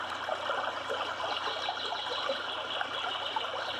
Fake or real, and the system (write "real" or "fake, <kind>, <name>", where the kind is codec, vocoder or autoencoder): real